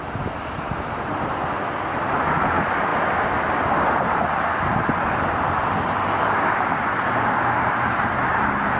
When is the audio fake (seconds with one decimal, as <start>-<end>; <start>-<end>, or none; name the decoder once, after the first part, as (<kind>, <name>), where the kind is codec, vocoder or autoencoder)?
none